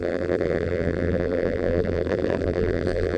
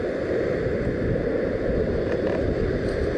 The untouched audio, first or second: second